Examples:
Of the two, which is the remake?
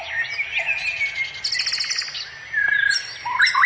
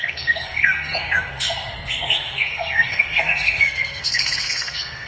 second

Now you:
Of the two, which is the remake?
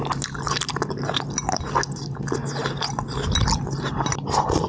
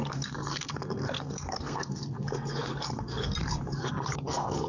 second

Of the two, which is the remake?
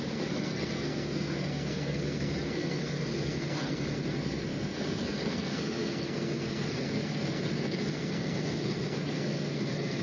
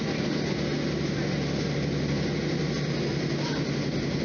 first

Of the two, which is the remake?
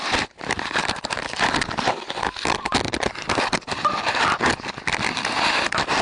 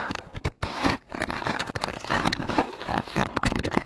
second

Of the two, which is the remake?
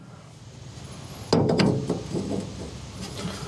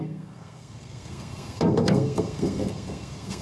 second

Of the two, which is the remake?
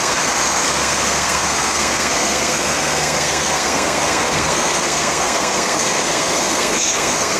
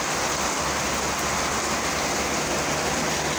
first